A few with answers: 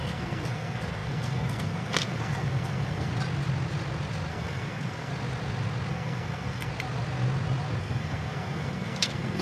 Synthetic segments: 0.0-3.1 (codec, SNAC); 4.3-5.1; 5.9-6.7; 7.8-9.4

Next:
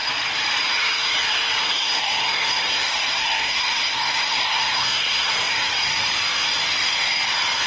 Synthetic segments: 1.6-5.7 (codec, SNAC)